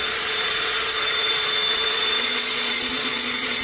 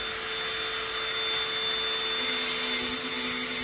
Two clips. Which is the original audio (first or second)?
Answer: second